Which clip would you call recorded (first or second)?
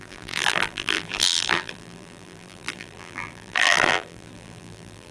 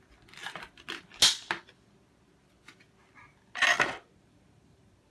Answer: second